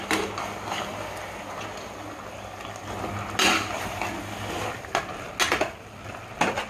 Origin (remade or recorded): recorded